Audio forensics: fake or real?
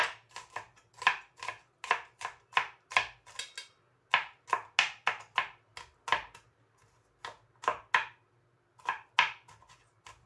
real